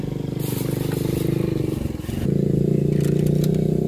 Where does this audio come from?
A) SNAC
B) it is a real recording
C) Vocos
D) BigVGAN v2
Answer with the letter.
B